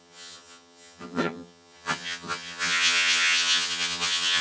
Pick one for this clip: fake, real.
fake